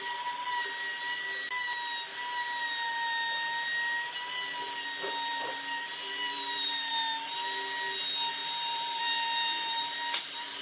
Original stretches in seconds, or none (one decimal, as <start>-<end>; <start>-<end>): 0.0-5.3; 6.9-8.4